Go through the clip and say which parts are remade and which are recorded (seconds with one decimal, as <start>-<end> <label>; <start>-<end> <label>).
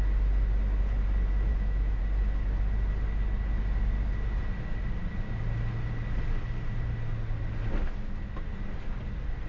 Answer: 0.0-1.5 recorded; 1.5-2.0 remade; 2.0-9.5 recorded